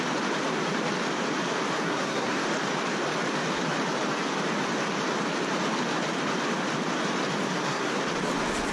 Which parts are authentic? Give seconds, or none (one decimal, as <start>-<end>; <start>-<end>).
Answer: 0.0-1.8; 2.4-7.4; 8.0-8.7